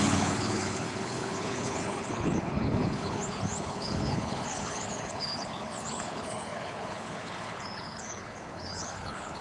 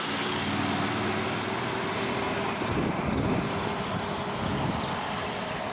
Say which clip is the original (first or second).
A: second